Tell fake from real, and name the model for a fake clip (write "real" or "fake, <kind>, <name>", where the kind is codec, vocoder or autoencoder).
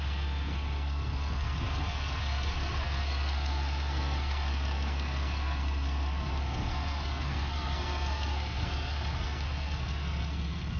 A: fake, codec, SNAC